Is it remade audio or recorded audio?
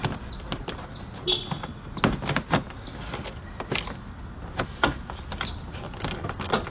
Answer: recorded